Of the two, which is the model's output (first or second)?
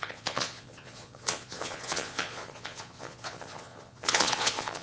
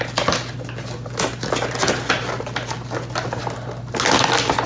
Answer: first